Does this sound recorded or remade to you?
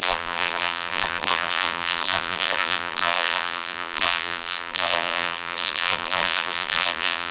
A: remade